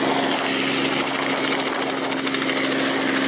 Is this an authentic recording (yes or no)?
yes